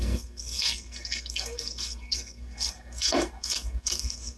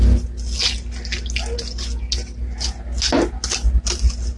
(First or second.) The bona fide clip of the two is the second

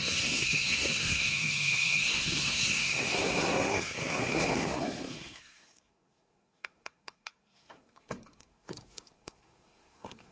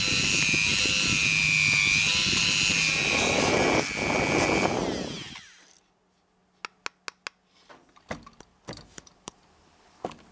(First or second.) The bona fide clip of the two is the second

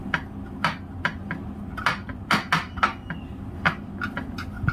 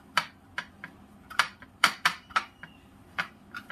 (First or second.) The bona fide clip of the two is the first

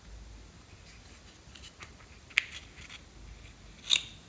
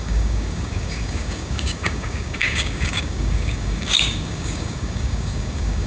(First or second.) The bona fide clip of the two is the first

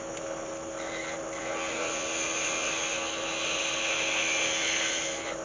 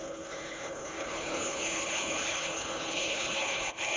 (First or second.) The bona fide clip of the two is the first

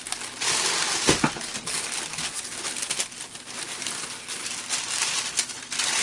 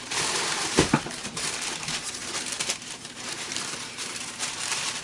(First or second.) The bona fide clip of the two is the first